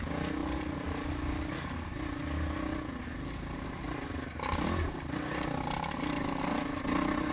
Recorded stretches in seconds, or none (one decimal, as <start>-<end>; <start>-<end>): 0.0-7.3

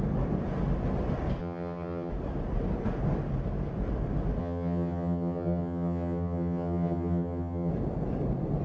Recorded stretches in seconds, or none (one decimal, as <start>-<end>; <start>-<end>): 0.0-1.4; 2.1-4.4; 7.7-8.6

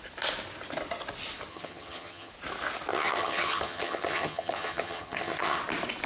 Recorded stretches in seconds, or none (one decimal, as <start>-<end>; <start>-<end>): 0.0-1.5; 2.3-2.9; 5.6-6.1